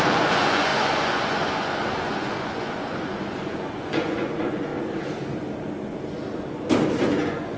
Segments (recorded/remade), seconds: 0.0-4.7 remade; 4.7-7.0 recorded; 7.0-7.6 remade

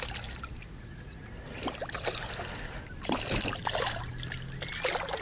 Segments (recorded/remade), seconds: 0.0-0.6 recorded; 0.6-1.3 remade; 1.3-5.2 recorded

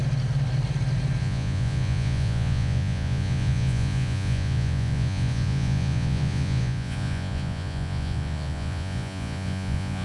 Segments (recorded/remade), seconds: 0.0-1.2 recorded; 1.2-10.0 remade

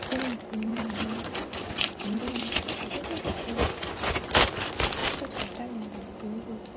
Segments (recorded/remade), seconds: 0.0-0.7 recorded; 0.7-4.3 remade; 4.3-6.8 recorded

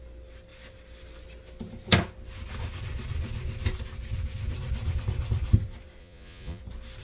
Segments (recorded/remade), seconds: 0.0-6.0 recorded; 6.0-6.6 remade; 6.6-7.0 recorded

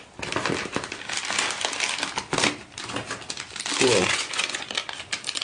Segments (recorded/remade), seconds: 0.0-4.0 recorded; 4.0-4.7 remade; 4.7-5.4 recorded

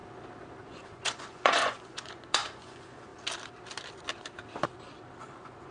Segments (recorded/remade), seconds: 0.0-0.6 recorded; 0.6-3.1 remade; 3.1-5.2 recorded; 5.2-5.7 remade